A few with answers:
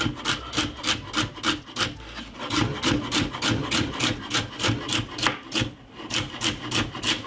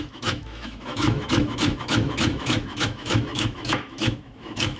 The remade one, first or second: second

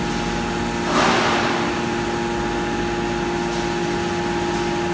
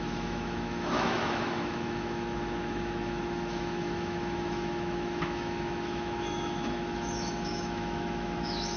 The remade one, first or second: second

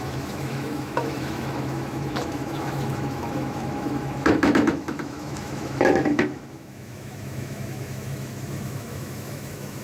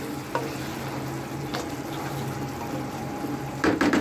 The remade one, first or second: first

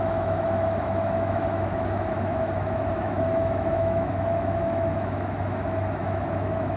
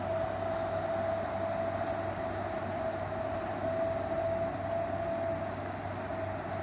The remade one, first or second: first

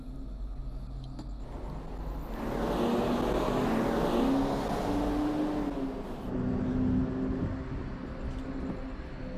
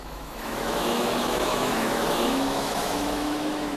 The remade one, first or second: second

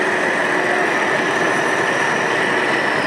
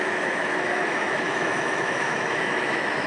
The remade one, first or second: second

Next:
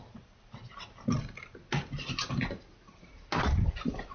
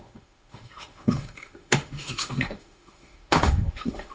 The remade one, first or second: second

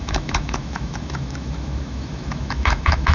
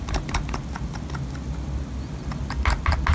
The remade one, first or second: first